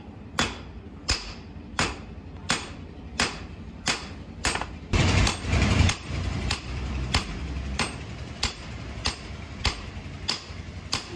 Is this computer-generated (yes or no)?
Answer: yes